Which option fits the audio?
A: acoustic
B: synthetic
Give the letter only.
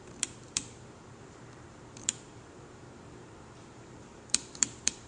B